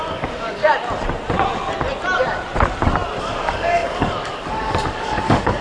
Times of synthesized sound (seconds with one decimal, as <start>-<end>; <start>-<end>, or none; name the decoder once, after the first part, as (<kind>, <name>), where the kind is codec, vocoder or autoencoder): 0.0-0.6 (codec, DAC); 3.2-5.6